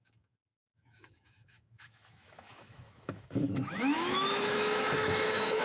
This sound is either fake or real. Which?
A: fake